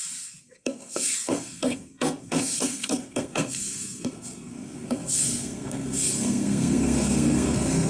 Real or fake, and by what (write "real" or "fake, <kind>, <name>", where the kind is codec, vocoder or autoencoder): fake, codec, SNAC